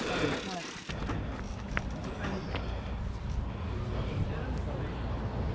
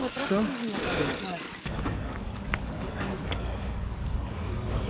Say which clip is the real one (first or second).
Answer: first